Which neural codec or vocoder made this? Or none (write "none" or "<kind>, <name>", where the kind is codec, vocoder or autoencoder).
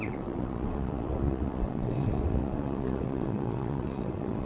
vocoder, WaveNeXt